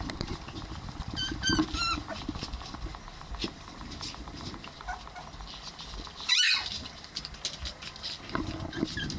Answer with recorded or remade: recorded